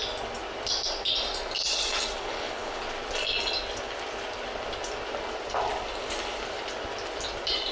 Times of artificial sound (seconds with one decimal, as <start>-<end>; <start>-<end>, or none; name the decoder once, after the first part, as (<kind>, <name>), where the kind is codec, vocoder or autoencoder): 2.2-2.8 (codec, HILCodec)